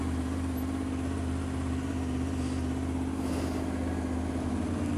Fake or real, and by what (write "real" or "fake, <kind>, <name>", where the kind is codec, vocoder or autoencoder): real